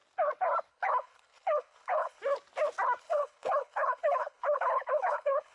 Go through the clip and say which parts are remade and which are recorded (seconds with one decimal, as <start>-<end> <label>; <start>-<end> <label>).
0.0-0.7 recorded; 0.7-2.2 remade; 2.2-3.0 recorded; 3.0-5.5 remade